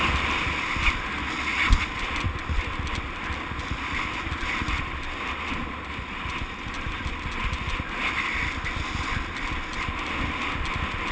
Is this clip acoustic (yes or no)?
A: yes